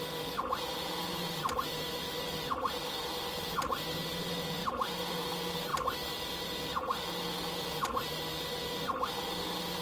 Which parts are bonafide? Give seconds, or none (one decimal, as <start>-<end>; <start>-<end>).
0.0-4.6; 5.1-9.8